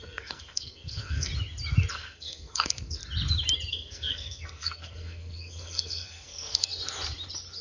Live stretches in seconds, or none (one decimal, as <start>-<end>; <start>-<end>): 1.3-1.9; 3.0-3.7; 6.7-7.6